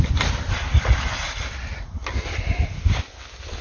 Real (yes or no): yes